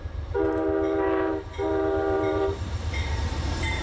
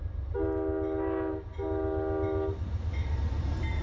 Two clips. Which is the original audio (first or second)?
second